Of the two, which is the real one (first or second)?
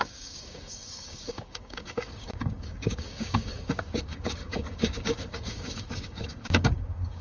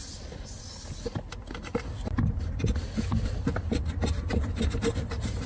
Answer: second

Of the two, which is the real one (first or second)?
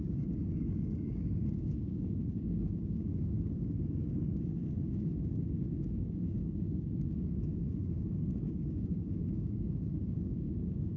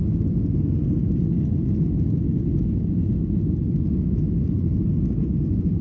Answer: second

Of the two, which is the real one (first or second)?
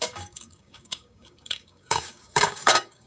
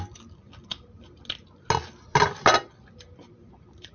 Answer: second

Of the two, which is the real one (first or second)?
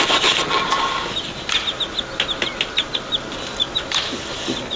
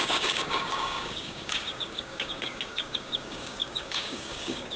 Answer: first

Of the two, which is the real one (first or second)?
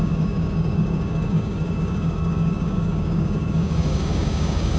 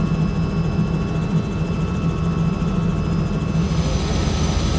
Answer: second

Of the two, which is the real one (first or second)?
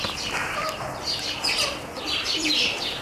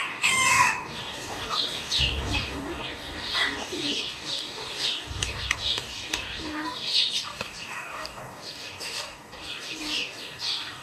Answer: first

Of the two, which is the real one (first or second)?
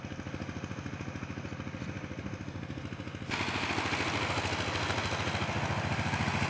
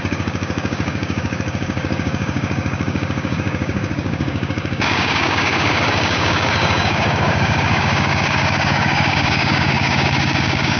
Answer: first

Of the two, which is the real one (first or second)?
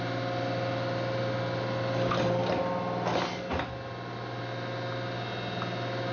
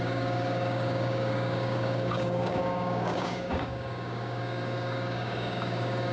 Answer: first